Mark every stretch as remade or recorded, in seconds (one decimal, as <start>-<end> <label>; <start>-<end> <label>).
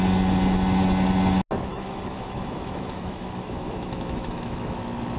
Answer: 0.0-1.7 recorded; 1.7-4.8 remade; 4.8-5.2 recorded